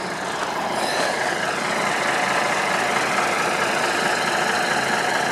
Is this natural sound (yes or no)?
yes